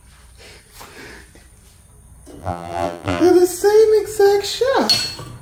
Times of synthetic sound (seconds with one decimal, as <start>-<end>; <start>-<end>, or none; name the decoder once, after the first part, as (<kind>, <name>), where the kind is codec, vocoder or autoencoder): 2.4-3.3 (vocoder, BigVGAN v2)